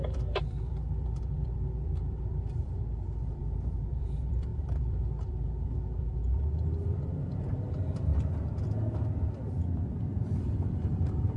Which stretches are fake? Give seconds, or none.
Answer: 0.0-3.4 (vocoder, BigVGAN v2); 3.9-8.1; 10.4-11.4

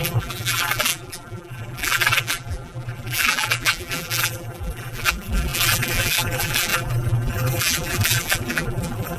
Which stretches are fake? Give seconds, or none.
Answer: 0.0-9.2 (vocoder, BigVGAN v2)

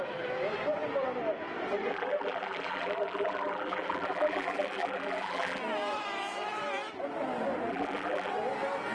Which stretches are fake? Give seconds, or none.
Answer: 1.9-5.6 (vocoder, BigVGAN v2); 7.7-8.3

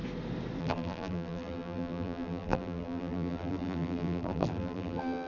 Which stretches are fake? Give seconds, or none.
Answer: 0.6-5.3 (vocoder, BigVGAN v2)

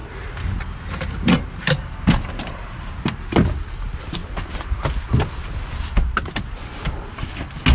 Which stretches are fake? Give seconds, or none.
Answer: 0.0-3.0 (vocoder, BigVGAN v2); 4.2-4.9

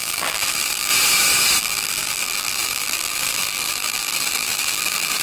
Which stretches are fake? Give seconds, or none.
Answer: 0.0-0.9 (vocoder, BigVGAN v2); 1.6-5.2